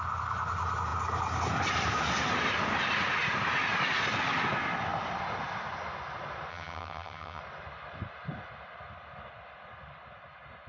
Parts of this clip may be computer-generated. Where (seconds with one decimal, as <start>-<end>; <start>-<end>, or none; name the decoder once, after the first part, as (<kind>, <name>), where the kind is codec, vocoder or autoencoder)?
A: 6.5-7.4 (vocoder, HiFi-GAN)